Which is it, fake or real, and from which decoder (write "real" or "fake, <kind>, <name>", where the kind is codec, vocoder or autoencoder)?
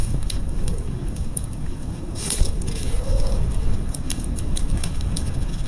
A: fake, codec, DAC